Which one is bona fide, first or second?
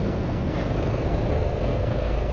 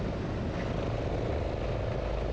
second